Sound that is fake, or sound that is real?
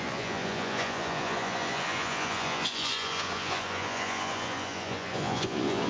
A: fake